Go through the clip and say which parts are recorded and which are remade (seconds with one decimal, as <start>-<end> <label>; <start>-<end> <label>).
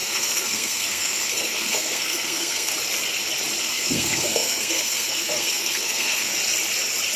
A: 0.0-2.7 remade; 2.7-3.6 recorded; 3.6-6.3 remade; 6.3-7.2 recorded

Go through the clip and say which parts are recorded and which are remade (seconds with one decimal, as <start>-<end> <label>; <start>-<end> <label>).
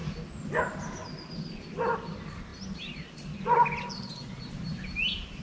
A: 0.0-5.4 recorded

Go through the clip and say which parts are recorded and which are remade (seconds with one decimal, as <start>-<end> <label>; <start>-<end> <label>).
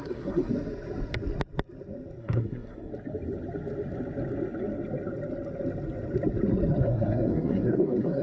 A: 0.0-0.5 remade; 0.5-2.2 recorded; 2.2-2.9 remade; 2.9-6.8 recorded; 6.8-8.2 remade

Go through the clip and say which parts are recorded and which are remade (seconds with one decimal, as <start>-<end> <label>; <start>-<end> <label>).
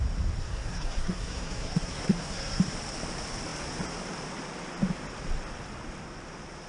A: 0.0-0.4 recorded; 0.4-2.6 remade; 2.6-6.7 recorded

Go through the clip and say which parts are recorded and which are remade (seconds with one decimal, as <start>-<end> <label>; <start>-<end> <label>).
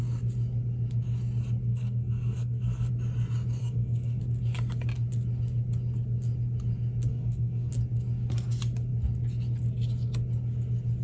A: 0.0-1.7 recorded; 1.7-2.9 remade; 2.9-3.6 recorded; 3.6-4.2 remade; 4.2-7.1 recorded; 7.1-7.7 remade; 7.7-11.0 recorded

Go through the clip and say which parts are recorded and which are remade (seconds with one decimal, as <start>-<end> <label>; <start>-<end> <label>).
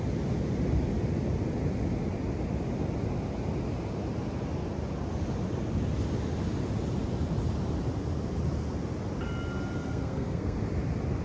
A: 0.0-9.8 recorded; 9.8-10.6 remade; 10.6-11.2 recorded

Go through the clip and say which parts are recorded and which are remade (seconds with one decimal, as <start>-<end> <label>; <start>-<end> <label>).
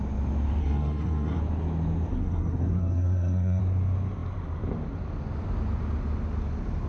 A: 0.0-0.6 recorded; 0.6-1.4 remade; 1.4-2.1 recorded; 2.1-3.6 remade; 3.6-6.9 recorded